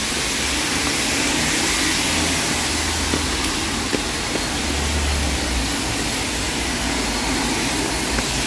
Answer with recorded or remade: recorded